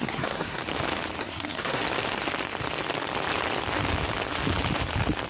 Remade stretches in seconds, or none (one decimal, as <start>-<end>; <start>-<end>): 0.0-0.6; 1.2-1.8